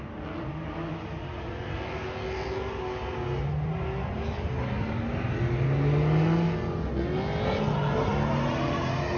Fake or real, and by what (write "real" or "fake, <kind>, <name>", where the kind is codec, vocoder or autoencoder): real